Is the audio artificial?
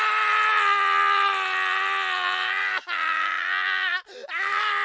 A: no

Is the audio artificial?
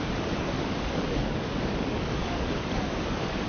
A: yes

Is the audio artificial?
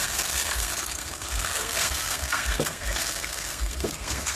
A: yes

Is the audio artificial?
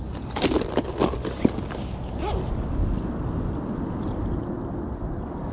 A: no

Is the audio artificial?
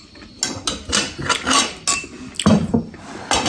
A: no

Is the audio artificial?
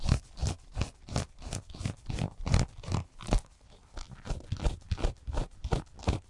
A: no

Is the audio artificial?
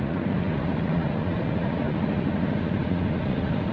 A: yes